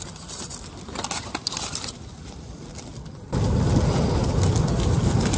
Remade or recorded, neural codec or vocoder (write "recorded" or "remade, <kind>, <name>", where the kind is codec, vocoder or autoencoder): recorded